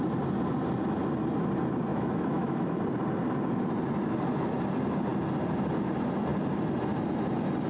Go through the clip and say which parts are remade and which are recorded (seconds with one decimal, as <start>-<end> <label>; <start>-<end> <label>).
0.0-1.9 recorded; 1.9-2.8 remade; 2.8-7.7 recorded